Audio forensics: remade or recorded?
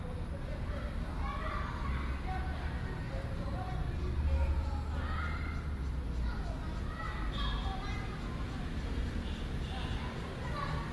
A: recorded